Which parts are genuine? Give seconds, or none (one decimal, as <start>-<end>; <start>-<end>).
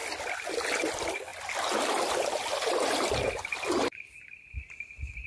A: 0.0-5.3